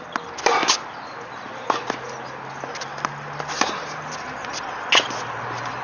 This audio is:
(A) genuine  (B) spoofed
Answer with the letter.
A